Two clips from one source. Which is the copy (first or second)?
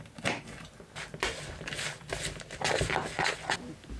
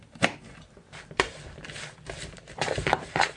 second